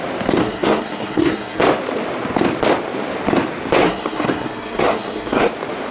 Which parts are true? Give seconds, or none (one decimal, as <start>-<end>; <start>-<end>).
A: 0.0-0.4; 1.6-3.8; 5.5-5.9